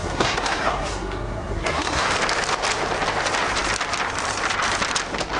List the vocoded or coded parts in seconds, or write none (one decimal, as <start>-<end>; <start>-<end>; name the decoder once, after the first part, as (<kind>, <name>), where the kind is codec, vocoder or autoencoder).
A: 0.0-2.1 (codec, SNAC)